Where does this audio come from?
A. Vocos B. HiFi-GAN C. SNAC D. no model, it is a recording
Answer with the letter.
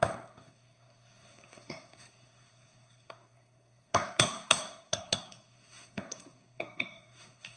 C